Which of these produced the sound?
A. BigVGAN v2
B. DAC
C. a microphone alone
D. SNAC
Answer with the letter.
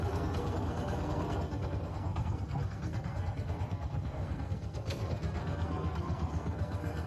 D